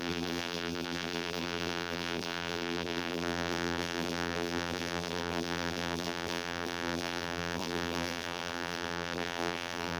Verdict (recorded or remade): remade